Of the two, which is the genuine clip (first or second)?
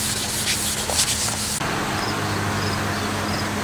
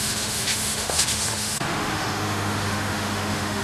first